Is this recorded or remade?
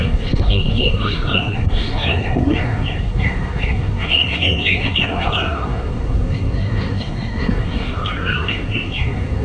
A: remade